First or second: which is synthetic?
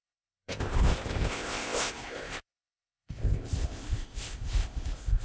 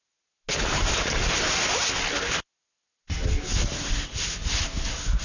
first